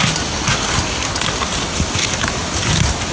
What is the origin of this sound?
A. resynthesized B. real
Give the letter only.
B